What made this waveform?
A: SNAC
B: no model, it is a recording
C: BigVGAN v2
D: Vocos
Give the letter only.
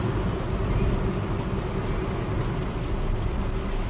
B